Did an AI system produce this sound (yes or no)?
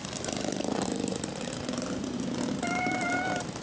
yes